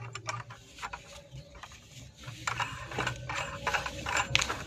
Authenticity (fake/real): real